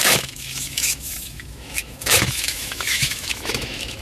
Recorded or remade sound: remade